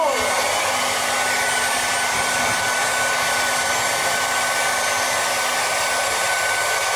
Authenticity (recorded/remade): recorded